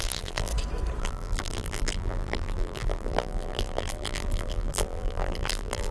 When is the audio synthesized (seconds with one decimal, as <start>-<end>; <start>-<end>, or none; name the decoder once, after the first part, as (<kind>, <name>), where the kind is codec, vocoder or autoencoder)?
0.0-0.5 (vocoder, BigVGAN v2); 1.0-5.9